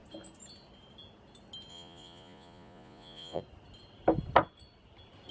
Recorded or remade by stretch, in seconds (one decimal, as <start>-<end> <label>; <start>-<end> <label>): 0.0-1.7 recorded; 1.7-3.4 remade; 3.4-5.3 recorded